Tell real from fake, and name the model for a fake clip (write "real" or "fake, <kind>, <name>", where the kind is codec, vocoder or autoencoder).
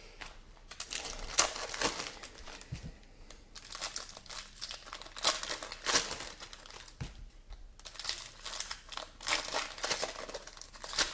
real